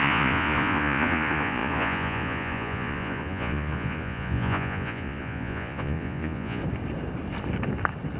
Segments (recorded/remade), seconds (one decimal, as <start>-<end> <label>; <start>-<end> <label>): 0.0-6.6 remade; 6.6-8.2 recorded